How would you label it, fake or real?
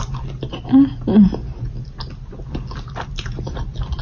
real